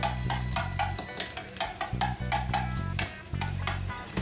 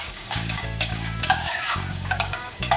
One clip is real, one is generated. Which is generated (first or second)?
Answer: second